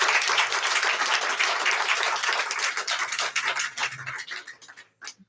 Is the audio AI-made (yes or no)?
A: no